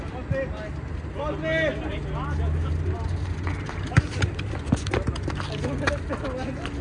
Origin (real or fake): real